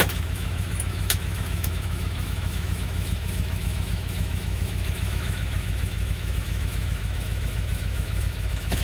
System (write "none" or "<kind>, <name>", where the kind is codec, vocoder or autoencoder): autoencoder, DAC-VAE